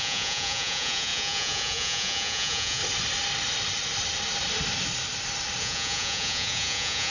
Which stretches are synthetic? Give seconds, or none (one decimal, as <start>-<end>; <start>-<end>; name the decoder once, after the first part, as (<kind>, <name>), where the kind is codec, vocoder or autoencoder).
0.0-2.8 (vocoder, Vocos); 5.6-7.1